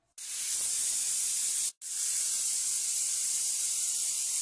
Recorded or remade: recorded